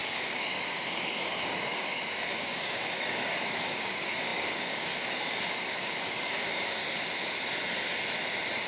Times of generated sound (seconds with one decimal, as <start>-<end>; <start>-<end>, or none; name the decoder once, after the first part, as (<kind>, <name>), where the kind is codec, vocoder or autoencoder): 0.0-6.8 (codec, DAC)